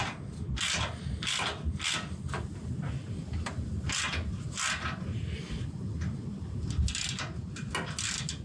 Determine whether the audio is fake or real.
real